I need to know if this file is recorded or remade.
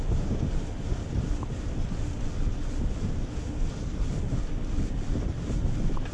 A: recorded